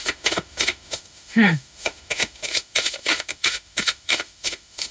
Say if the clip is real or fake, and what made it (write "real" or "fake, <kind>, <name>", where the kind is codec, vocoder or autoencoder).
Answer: fake, autoencoder, DAC-VAE